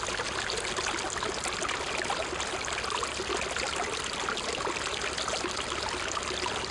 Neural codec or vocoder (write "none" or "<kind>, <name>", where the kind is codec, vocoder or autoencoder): none